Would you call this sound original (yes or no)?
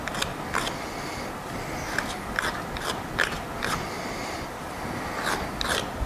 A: yes